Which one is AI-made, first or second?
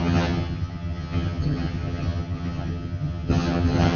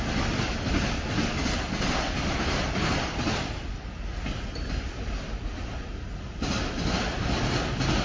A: first